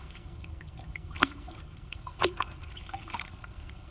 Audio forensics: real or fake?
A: fake